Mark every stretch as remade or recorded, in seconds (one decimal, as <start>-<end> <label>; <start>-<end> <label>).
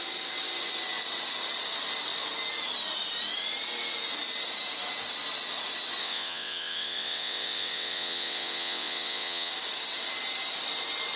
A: 0.0-6.0 recorded; 6.0-9.5 remade; 9.5-11.2 recorded